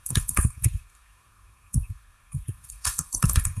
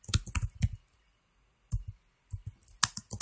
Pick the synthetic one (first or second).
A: first